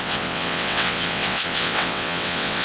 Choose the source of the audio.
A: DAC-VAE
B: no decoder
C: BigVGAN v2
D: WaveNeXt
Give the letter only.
D